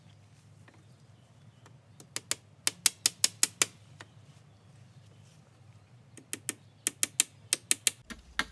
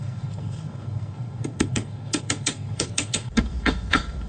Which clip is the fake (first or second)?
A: second